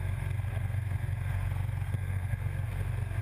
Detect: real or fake fake